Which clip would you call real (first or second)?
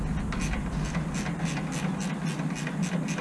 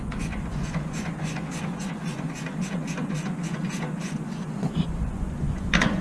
first